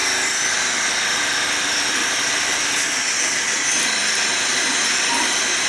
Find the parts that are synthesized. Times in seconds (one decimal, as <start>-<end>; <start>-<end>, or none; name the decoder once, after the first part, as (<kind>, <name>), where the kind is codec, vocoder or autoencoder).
none